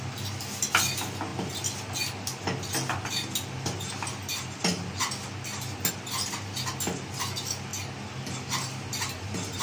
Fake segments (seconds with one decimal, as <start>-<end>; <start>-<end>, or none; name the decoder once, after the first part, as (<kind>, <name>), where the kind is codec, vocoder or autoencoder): none